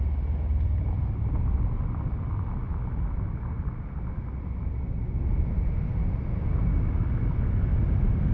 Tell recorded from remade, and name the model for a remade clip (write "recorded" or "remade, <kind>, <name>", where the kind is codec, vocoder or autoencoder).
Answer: recorded